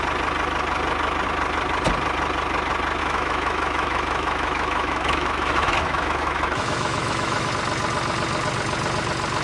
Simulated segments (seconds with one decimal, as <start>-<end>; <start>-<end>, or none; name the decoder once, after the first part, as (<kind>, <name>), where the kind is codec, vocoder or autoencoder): 3.0-7.5 (autoencoder, DAC-VAE)